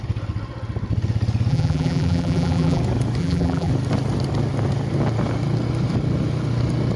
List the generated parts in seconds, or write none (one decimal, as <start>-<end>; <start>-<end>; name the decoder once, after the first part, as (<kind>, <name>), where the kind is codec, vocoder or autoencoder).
1.5-2.8 (vocoder, BigVGAN v2); 3.2-3.7

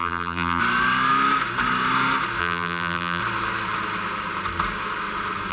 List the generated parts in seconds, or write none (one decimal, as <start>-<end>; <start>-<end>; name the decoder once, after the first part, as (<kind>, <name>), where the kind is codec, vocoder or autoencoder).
0.0-0.6 (vocoder, BigVGAN v2); 2.4-3.2

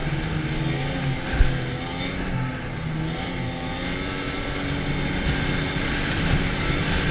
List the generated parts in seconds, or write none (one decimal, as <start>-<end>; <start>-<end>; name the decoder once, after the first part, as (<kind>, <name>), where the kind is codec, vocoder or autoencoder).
none